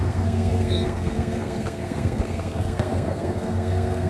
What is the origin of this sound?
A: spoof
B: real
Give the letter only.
A